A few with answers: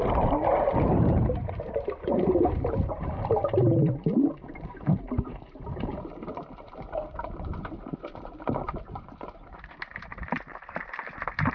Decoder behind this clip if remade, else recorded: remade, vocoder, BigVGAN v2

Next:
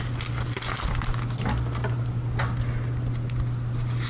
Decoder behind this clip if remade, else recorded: recorded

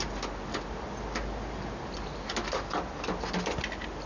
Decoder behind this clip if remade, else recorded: recorded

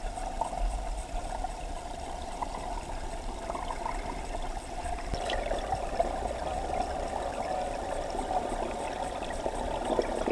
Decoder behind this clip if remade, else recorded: recorded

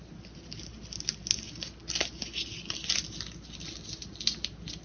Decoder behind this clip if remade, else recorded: recorded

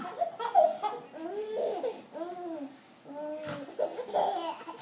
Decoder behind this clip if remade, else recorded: recorded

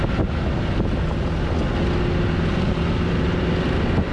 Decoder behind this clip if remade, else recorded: recorded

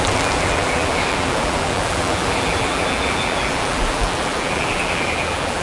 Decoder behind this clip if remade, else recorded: remade, vocoder, BigVGAN v2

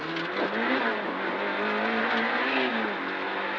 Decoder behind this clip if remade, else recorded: recorded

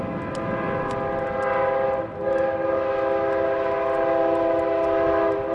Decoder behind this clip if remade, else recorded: recorded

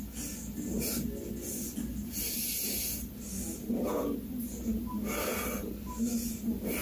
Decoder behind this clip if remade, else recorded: recorded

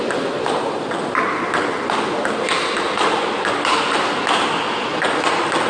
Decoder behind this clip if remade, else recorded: recorded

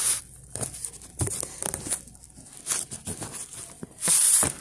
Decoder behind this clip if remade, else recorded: recorded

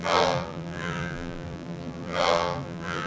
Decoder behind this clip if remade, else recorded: remade, vocoder, BigVGAN v2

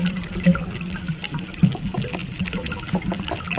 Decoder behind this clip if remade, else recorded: recorded